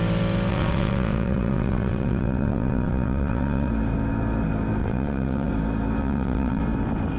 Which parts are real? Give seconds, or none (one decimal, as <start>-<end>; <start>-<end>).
0.0-0.5; 3.7-4.8; 5.5-6.0; 6.6-7.2